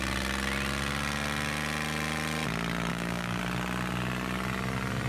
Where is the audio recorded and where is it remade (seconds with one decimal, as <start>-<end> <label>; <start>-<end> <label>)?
0.0-2.9 recorded; 2.9-3.4 remade; 3.4-5.1 recorded